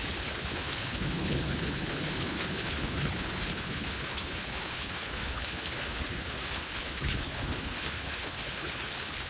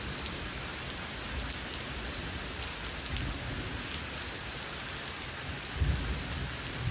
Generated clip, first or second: first